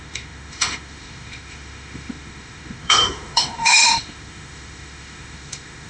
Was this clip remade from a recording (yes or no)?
yes